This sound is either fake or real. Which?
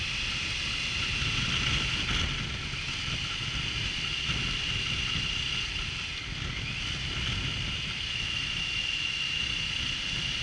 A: real